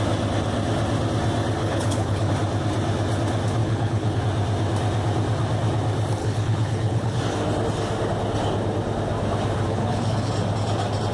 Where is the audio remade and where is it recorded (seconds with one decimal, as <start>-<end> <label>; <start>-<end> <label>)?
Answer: 0.0-1.6 recorded; 1.6-2.3 remade; 2.3-3.6 recorded; 3.6-4.2 remade; 4.2-6.2 recorded; 6.2-7.2 remade; 7.2-9.7 recorded; 9.7-10.3 remade; 10.3-11.1 recorded